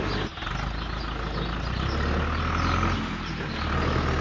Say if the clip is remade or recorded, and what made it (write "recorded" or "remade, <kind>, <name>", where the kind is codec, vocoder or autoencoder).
recorded